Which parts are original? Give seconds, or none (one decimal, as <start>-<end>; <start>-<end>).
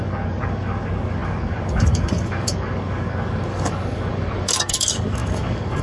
none